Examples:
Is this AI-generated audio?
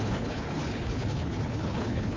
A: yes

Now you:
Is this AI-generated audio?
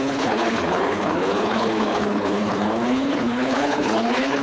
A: yes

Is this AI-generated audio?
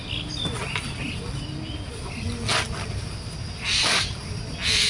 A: no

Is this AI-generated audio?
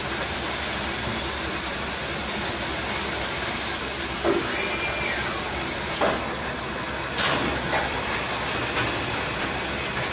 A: no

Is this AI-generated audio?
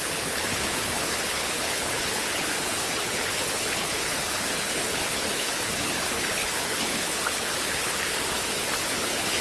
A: yes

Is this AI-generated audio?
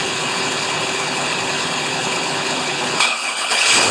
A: yes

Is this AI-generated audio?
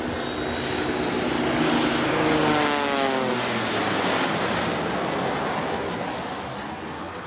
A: no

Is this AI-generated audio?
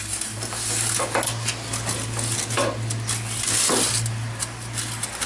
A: no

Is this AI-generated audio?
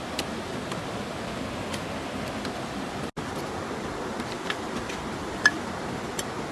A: no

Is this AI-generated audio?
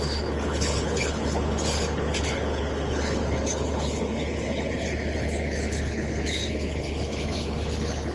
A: yes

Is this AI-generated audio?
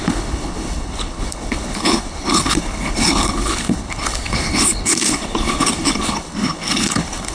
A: yes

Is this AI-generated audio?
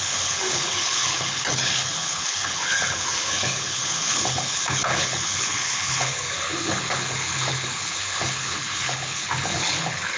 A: yes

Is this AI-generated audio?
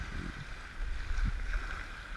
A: no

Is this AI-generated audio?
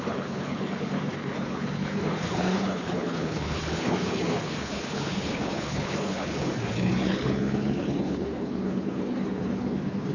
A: yes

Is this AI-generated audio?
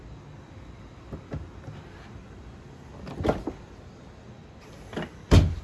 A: no